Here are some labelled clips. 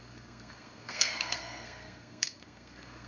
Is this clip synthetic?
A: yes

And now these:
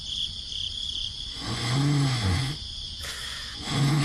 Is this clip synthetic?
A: yes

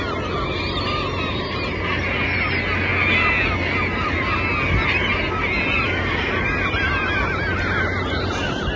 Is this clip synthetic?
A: no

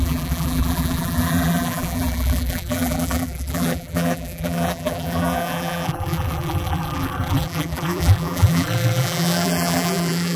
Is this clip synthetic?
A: yes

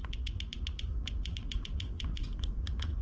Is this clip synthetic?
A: yes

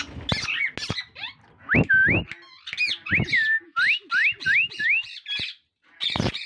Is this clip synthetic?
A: no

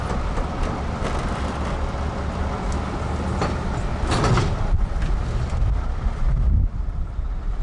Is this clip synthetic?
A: no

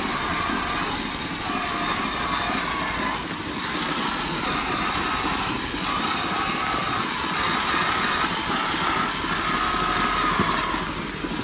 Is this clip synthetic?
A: no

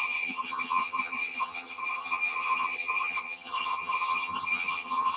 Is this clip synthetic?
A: yes